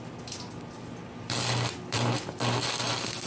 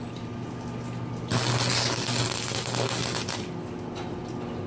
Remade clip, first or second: first